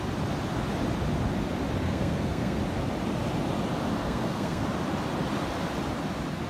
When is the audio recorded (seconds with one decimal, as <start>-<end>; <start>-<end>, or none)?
0.0-1.8; 2.6-4.0; 4.6-6.5